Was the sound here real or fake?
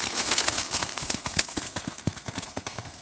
fake